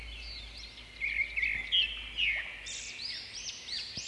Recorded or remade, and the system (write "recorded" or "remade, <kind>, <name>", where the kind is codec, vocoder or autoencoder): recorded